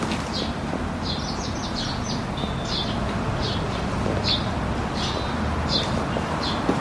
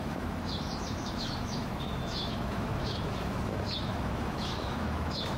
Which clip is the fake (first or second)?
second